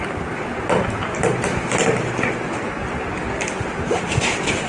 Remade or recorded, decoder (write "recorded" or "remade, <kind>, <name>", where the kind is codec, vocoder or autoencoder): recorded